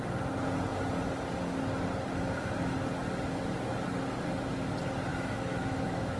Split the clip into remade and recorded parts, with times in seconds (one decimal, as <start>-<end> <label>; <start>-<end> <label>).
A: 0.0-5.1 recorded; 5.1-6.2 remade